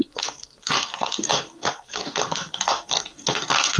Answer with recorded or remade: remade